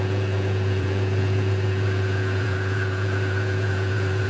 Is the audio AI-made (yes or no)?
yes